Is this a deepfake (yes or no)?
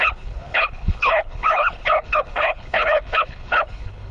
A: yes